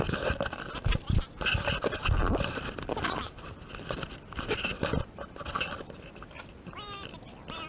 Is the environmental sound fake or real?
fake